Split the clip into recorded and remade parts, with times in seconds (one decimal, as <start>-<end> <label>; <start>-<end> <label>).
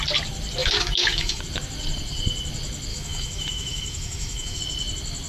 0.0-0.6 recorded; 0.6-1.4 remade; 1.4-2.9 recorded; 2.9-4.6 remade; 4.6-5.3 recorded